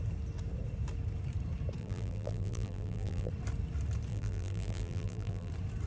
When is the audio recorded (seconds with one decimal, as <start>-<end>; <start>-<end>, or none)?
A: 0.0-1.8; 3.3-4.1; 5.5-5.9